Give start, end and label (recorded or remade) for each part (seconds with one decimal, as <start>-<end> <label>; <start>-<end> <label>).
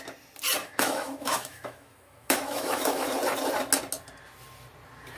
0.0-0.6 recorded; 0.6-3.1 remade; 3.1-5.2 recorded